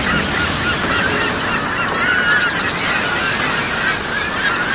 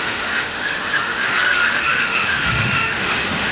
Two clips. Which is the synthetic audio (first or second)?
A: second